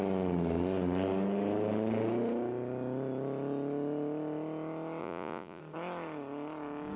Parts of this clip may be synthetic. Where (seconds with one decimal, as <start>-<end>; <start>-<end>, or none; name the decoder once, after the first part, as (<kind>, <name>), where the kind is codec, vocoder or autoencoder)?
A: 5.0-5.6 (vocoder, Vocos)